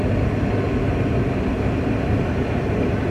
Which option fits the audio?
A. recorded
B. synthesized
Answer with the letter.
A